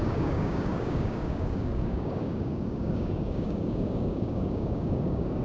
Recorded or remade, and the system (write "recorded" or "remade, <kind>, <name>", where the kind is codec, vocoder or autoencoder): remade, codec, DAC